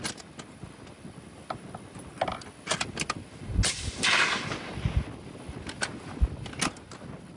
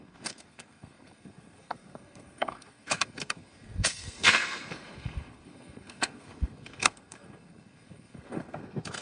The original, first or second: first